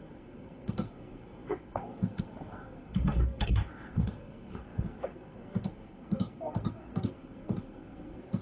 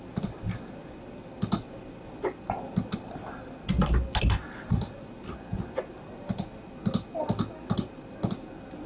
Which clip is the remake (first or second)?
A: first